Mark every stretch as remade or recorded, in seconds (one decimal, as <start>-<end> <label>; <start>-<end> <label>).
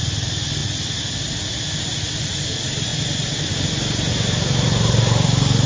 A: 0.0-5.7 recorded